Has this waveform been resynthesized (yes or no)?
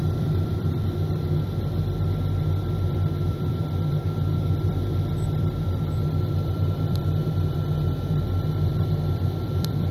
yes